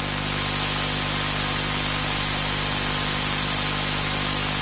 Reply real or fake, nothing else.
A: real